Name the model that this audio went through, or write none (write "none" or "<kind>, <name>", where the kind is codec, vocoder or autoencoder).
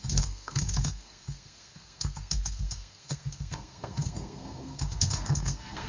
codec, SNAC